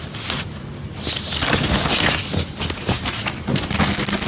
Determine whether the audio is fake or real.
real